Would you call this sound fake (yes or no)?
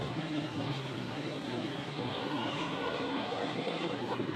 yes